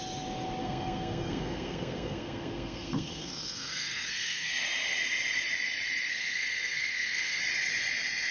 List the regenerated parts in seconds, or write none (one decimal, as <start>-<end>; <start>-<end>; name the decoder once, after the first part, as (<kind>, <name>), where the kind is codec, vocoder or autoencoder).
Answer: 0.6-4.5 (codec, SNAC); 6.1-7.4